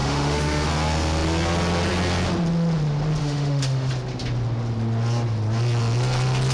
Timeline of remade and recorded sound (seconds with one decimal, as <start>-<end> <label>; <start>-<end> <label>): 0.0-0.7 remade; 0.7-3.2 recorded; 3.2-3.9 remade; 3.9-6.5 recorded